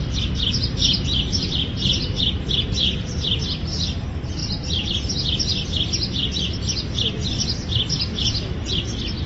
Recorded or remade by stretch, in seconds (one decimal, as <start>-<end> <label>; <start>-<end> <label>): 0.0-9.3 recorded